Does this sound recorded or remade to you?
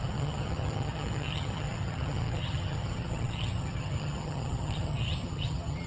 remade